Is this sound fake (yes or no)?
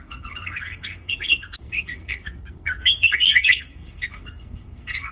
yes